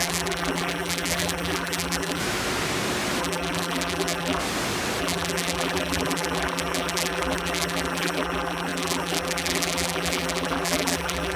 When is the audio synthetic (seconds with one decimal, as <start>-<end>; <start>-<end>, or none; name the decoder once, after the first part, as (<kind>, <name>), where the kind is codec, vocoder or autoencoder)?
0.0-2.2 (vocoder, BigVGAN v2); 3.2-4.4; 5.0-11.4